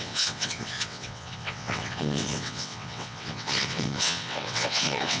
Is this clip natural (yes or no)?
no